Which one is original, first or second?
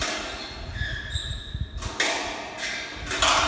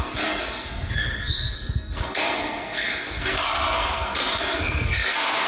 first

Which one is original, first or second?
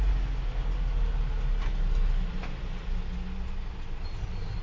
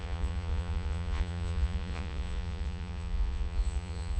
first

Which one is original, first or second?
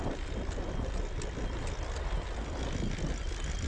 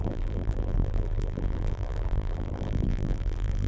first